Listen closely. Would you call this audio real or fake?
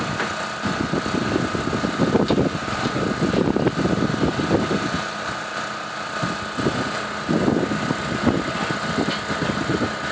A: real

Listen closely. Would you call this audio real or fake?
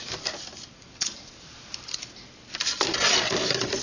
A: real